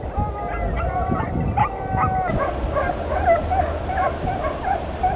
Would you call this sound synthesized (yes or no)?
no